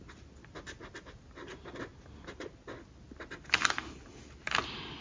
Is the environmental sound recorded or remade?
recorded